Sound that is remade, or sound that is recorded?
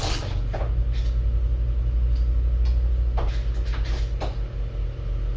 recorded